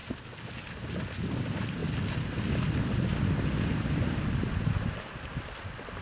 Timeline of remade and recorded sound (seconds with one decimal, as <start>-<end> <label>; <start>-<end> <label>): 0.0-6.0 recorded